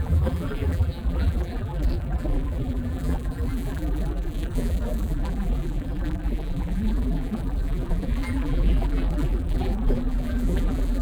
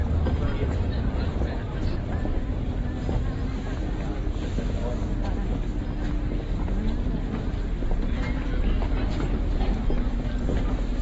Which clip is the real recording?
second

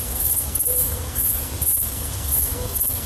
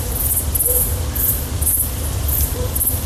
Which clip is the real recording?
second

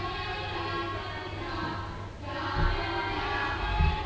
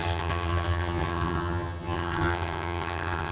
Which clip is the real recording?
first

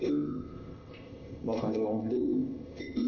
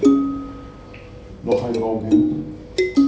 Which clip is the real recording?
second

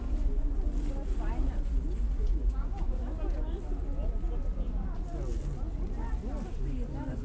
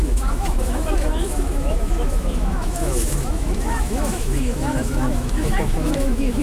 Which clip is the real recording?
first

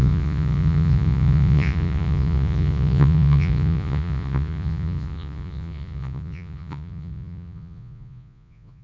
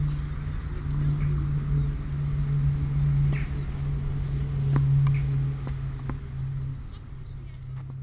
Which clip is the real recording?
second